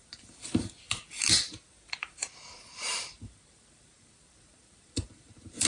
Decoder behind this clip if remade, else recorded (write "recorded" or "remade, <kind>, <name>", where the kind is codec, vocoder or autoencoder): remade, vocoder, BigVGAN v2